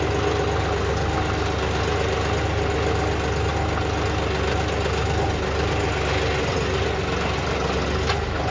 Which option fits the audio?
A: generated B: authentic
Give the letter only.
B